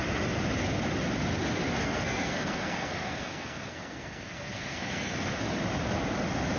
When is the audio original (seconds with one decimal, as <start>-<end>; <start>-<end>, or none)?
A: 0.0-1.8; 5.6-6.6